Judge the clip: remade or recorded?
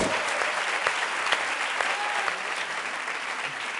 recorded